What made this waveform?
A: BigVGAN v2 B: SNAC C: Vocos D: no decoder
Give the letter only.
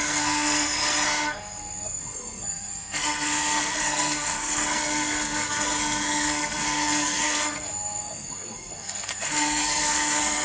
B